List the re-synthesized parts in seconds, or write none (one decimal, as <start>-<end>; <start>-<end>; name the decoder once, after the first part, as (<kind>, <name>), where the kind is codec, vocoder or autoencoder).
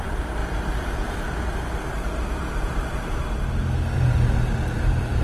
0.0-3.2 (vocoder, BigVGAN v2); 4.8-5.2